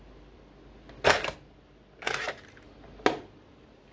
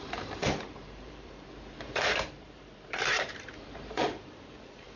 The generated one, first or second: second